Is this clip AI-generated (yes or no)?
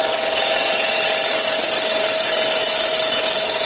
yes